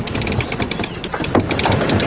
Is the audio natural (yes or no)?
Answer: yes